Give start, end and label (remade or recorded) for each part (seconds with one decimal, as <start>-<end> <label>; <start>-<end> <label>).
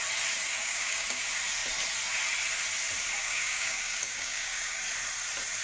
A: 0.0-0.6 recorded; 0.6-1.2 remade; 1.2-3.2 recorded; 3.2-4.8 remade; 4.8-5.6 recorded